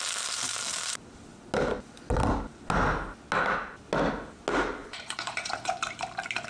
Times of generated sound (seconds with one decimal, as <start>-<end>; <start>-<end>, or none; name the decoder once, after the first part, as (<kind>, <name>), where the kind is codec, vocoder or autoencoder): 4.8-5.8 (vocoder, Vocos)